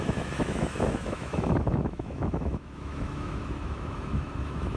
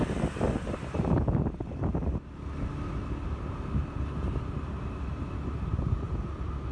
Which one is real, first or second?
second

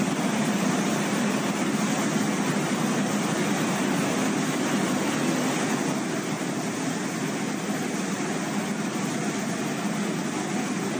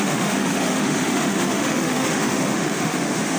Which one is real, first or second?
first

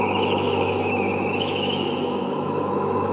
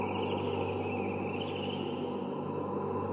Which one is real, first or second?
second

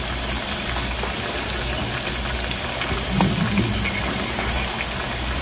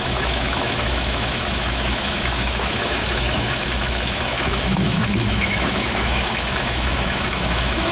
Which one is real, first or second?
first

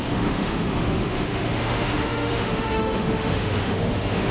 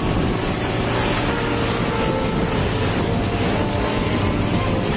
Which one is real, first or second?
second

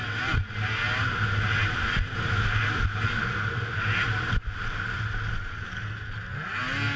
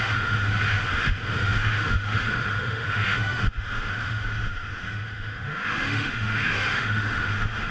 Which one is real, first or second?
first